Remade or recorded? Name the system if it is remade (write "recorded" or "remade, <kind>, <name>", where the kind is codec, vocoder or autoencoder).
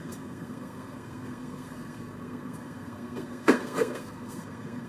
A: remade, codec, SNAC